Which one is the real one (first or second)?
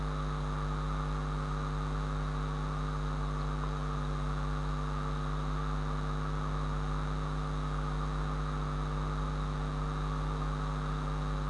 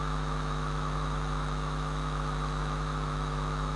first